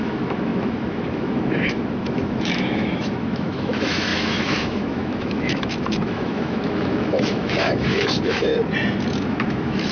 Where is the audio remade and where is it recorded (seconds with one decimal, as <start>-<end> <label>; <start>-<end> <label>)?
0.0-8.5 remade; 8.5-9.1 recorded; 9.1-9.9 remade